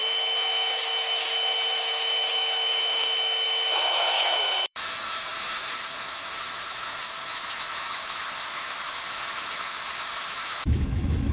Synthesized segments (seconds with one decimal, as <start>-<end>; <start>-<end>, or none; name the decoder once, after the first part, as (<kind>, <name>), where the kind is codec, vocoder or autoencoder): 0.0-11.3 (autoencoder, DAC-VAE)